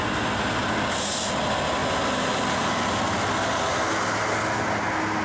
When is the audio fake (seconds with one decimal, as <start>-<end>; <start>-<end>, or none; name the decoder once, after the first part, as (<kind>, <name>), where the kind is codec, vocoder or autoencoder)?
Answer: none